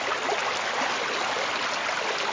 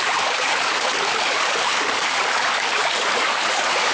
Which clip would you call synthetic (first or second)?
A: second